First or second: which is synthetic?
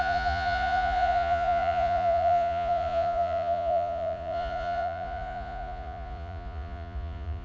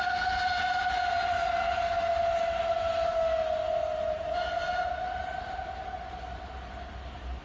first